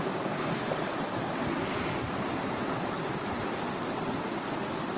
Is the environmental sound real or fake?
real